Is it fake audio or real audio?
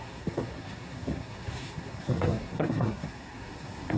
fake